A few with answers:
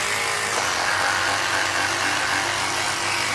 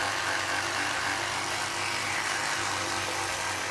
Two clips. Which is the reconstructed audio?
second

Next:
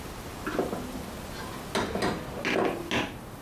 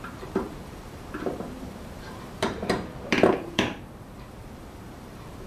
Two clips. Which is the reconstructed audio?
second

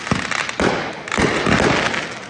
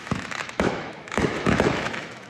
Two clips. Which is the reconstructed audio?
second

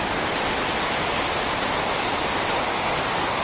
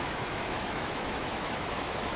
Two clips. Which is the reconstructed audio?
second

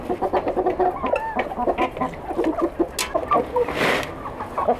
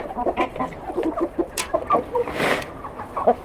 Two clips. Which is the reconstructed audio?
second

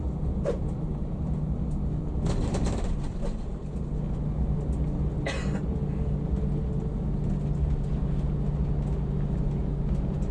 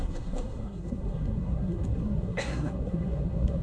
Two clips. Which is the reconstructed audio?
second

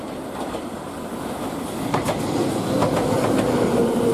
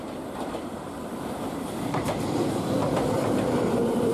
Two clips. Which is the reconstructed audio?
second